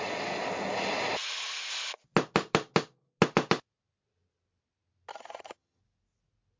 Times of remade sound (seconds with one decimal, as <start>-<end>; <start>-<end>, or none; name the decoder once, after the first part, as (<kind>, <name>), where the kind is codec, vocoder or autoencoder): 5.1-5.8 (vocoder, HiFi-GAN)